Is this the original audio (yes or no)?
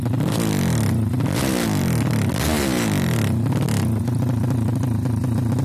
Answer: yes